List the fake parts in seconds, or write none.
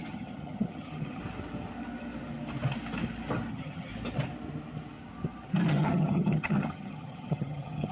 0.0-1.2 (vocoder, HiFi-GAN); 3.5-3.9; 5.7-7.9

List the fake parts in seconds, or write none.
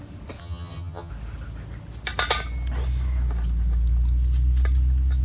0.4-1.1 (vocoder, HiFi-GAN)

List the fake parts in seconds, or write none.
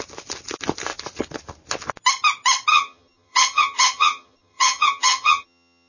2.7-5.9 (vocoder, HiFi-GAN)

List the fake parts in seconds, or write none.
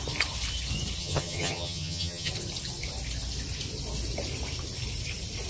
1.0-2.3 (vocoder, HiFi-GAN)